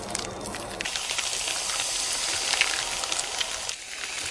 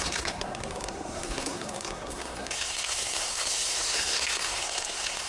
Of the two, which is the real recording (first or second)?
first